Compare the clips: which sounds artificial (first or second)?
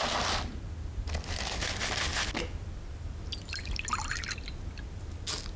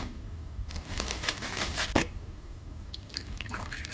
second